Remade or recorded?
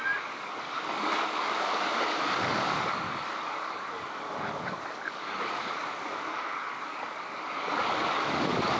remade